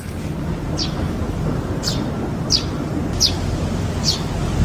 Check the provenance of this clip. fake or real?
real